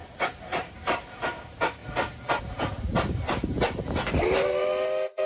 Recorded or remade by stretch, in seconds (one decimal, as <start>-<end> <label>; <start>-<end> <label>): 0.0-0.5 recorded; 0.5-1.8 remade; 1.8-2.4 recorded; 2.4-5.2 remade